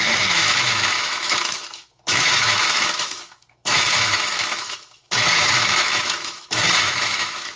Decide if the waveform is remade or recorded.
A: remade